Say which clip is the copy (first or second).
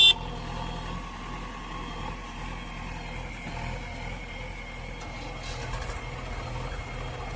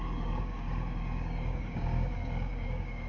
second